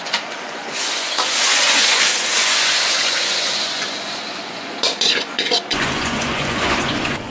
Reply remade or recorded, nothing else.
remade